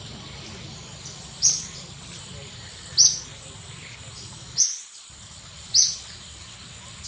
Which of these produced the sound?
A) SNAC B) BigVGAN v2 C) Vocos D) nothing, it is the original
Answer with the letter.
D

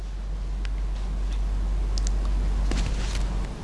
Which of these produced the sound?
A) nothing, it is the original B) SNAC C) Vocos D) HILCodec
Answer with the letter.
A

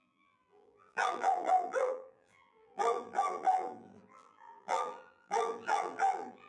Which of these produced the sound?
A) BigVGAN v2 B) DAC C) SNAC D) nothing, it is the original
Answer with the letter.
A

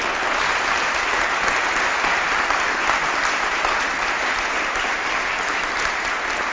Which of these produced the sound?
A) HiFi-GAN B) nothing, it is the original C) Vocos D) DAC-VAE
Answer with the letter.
B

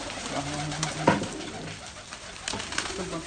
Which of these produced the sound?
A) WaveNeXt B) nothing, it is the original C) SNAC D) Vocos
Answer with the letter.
B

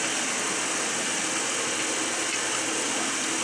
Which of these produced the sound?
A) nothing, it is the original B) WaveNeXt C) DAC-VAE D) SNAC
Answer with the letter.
A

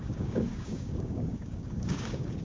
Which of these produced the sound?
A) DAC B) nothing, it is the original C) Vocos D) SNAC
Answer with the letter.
A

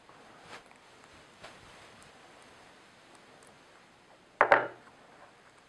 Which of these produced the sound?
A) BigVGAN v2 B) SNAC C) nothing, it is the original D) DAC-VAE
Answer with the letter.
C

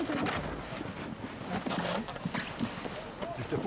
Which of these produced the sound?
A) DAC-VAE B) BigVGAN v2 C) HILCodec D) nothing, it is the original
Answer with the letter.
D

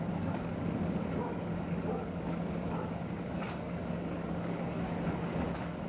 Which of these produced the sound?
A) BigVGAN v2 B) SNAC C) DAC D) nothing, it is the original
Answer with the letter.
C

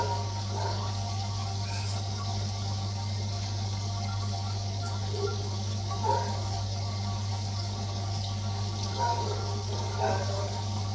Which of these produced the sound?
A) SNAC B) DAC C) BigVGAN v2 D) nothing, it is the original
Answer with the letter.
B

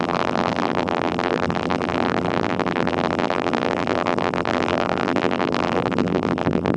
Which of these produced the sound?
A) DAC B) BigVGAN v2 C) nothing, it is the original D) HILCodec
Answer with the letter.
B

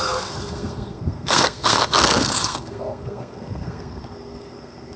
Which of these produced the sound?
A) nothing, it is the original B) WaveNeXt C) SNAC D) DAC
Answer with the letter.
C